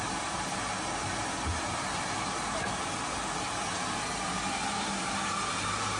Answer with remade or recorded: recorded